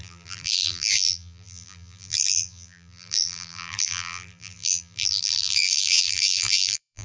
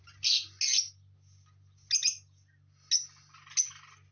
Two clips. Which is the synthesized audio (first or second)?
first